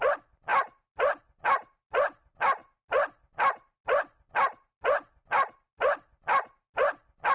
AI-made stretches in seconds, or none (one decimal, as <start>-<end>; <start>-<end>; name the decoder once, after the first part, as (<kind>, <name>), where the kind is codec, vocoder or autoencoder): none